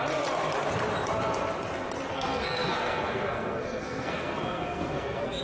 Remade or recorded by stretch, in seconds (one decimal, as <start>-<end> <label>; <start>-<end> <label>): 0.0-2.1 recorded; 2.1-5.4 remade

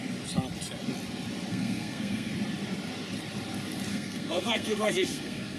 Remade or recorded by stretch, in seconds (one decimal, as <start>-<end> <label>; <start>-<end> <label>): 0.0-1.5 recorded; 1.5-2.3 remade; 2.3-3.9 recorded; 3.9-5.6 remade

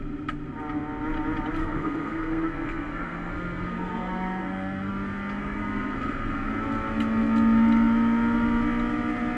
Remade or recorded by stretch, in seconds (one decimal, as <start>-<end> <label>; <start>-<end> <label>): 0.0-1.6 recorded; 1.6-4.9 remade; 4.9-5.4 recorded; 5.4-6.5 remade; 6.5-9.4 recorded

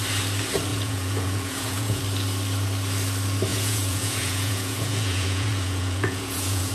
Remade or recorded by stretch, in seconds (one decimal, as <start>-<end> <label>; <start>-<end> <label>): 0.0-0.7 recorded; 0.7-2.0 remade; 2.0-3.5 recorded; 3.5-6.7 remade

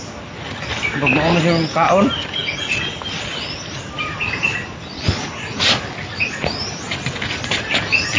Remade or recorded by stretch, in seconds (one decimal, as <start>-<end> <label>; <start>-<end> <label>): 0.0-8.2 recorded

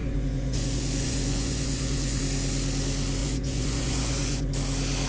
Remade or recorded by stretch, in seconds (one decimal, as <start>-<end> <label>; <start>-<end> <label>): 0.0-2.2 remade; 2.2-3.2 recorded; 3.2-4.5 remade; 4.5-5.1 recorded

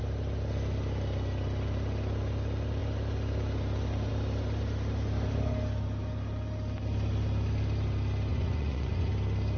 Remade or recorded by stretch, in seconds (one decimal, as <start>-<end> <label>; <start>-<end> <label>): 0.0-8.3 recorded; 8.3-9.1 remade; 9.1-9.6 recorded